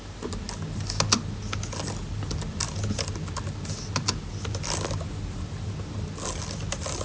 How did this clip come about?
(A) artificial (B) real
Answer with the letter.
B